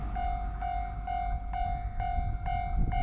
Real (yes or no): yes